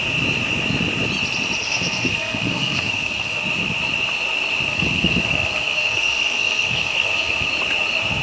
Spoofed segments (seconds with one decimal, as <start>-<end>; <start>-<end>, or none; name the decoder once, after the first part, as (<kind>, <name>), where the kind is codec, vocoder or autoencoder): 1.6-3.4 (codec, SNAC); 4.7-7.5